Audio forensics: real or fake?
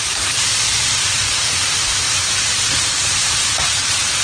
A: fake